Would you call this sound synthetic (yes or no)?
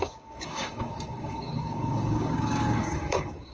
yes